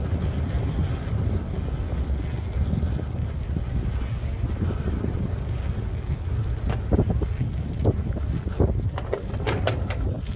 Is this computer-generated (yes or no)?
no